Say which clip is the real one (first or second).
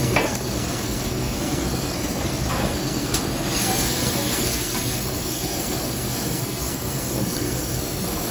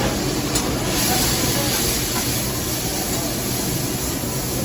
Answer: second